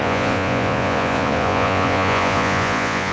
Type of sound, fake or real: fake